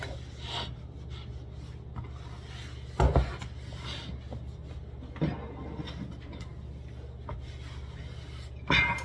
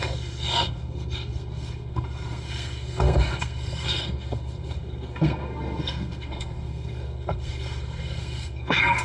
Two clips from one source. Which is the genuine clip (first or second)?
first